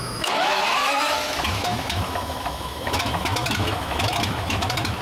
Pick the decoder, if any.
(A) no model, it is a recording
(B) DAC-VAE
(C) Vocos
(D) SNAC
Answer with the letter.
B